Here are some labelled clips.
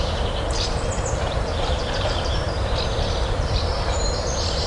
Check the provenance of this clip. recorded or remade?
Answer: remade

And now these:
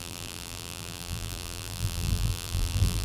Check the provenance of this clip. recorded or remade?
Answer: remade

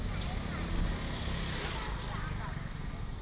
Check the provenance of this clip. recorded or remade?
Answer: recorded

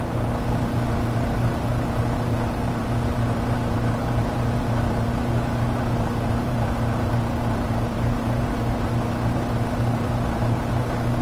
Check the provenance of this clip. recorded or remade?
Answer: remade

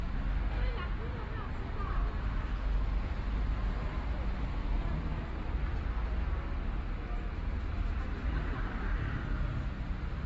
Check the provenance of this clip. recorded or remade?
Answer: recorded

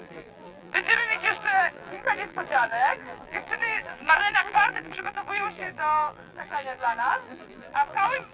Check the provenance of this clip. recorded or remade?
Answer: remade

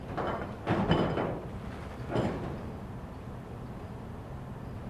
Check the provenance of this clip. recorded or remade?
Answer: recorded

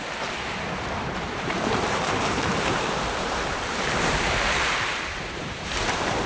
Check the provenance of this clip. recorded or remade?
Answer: remade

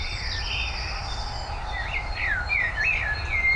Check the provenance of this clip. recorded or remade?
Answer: recorded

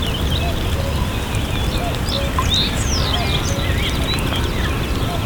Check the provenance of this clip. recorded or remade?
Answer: recorded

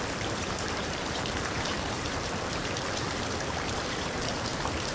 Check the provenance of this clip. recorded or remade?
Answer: remade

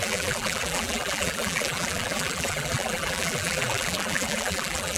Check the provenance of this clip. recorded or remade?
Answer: remade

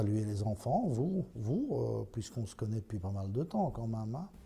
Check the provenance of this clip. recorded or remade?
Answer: recorded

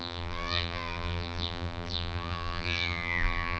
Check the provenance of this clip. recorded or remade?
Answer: remade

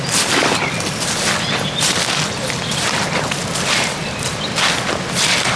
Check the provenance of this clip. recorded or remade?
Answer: recorded